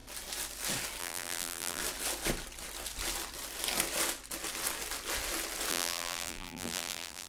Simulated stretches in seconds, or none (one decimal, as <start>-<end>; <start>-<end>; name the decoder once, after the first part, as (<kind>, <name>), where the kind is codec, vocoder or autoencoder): 1.0-1.8 (vocoder, BigVGAN v2); 5.7-7.3